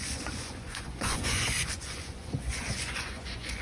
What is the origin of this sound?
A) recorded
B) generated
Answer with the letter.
B